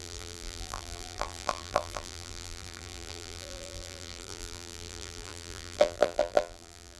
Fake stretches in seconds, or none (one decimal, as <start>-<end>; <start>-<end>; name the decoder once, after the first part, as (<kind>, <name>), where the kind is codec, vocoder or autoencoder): 0.0-7.0 (vocoder, BigVGAN v2)